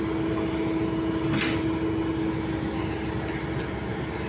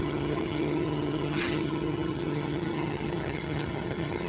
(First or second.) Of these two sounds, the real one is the first